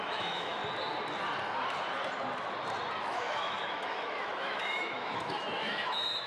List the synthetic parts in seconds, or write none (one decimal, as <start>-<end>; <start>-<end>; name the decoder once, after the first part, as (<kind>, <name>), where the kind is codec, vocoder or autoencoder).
0.0-0.6 (autoencoder, DAC-VAE); 3.0-6.3